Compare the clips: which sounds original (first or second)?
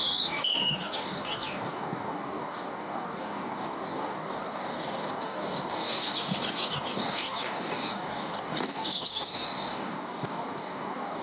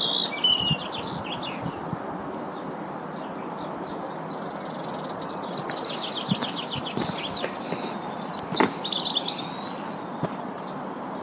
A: second